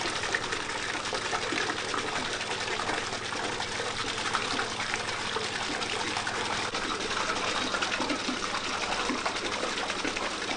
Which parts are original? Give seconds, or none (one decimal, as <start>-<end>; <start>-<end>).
0.0-10.6